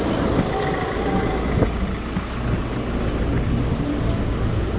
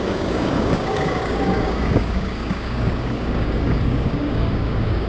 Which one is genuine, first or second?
first